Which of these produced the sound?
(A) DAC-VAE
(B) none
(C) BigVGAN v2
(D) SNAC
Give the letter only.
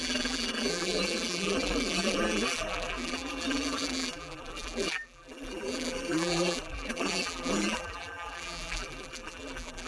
C